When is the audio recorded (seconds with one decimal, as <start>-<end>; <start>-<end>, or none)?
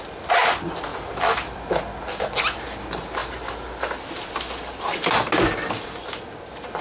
0.0-6.8